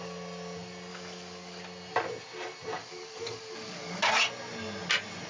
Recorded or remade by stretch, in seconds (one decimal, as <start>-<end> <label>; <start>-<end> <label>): 0.0-0.9 recorded; 0.9-1.6 remade; 1.6-2.8 recorded; 2.8-4.0 remade; 4.0-5.3 recorded